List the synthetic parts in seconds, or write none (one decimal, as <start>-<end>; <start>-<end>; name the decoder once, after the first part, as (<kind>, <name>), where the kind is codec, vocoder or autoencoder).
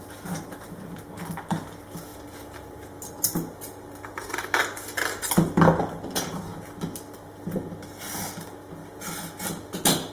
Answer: 2.1-4.3 (vocoder, BigVGAN v2)